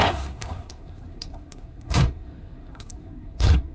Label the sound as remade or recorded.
remade